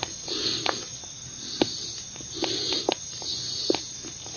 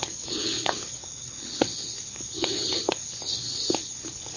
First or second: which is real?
first